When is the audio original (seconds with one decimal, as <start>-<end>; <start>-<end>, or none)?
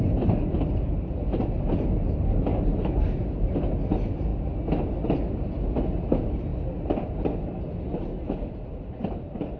0.0-9.6